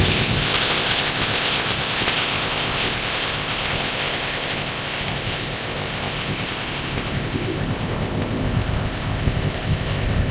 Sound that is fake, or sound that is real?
fake